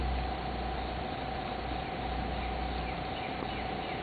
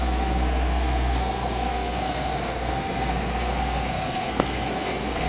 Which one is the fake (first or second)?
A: second